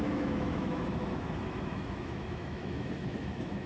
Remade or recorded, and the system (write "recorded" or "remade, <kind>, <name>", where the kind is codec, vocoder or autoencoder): remade, autoencoder, DAC-VAE